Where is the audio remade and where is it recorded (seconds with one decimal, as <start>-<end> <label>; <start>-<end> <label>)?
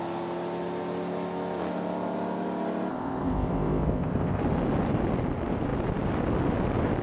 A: 0.0-2.9 recorded; 2.9-4.4 remade; 4.4-7.0 recorded